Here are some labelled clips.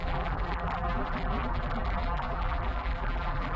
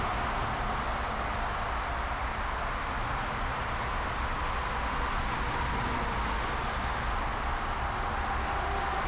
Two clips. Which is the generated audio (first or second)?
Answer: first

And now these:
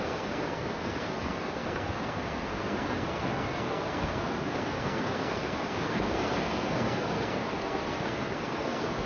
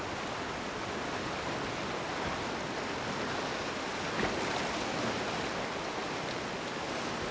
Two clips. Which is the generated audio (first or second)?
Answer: first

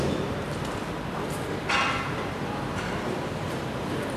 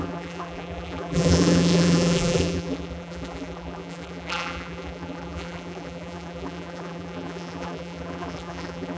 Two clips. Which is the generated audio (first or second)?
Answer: second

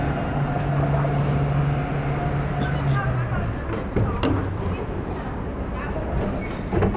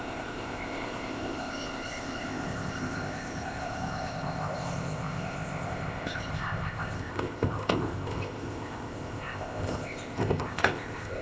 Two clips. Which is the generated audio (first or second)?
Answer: second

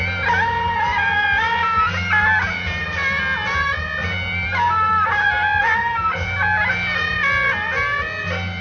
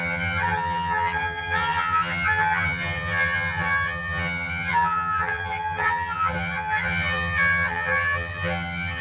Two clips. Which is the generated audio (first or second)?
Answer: second